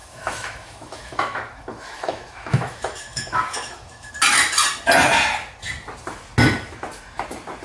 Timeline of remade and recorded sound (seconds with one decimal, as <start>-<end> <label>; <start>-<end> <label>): 0.0-4.1 remade; 4.1-7.6 recorded